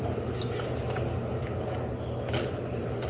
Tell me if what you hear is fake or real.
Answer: real